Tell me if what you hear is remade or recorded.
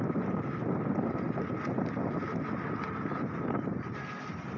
recorded